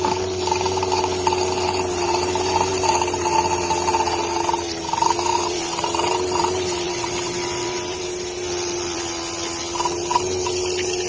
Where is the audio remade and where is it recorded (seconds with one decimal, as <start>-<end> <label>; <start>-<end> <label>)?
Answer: 0.0-5.3 recorded; 5.3-9.6 remade; 9.6-11.1 recorded